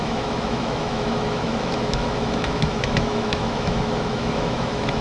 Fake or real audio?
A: fake